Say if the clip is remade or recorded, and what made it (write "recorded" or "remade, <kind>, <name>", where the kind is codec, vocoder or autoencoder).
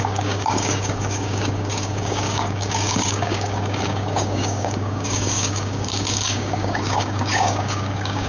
remade, codec, DAC